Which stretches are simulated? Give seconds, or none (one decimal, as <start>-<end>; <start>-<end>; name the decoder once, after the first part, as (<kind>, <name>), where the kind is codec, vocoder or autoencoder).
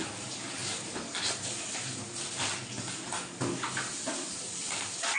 none